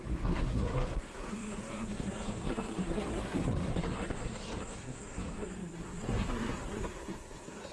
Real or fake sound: fake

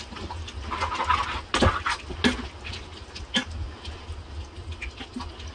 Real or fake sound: real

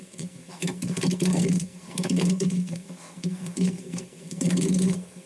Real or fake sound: fake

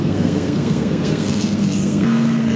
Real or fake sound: fake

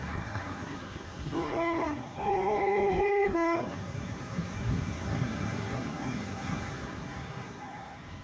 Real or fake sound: fake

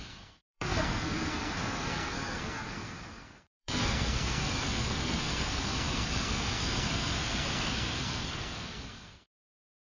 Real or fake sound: fake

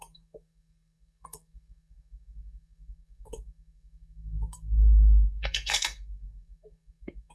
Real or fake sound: fake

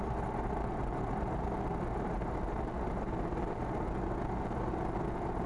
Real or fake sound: real